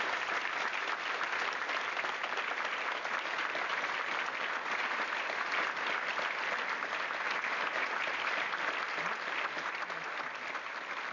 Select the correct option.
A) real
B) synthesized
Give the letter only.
A